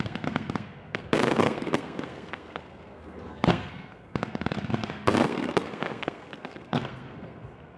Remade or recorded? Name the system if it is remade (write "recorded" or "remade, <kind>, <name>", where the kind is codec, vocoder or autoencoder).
remade, codec, SNAC